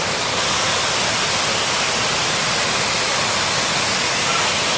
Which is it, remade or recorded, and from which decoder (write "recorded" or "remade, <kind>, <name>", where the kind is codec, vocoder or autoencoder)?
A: recorded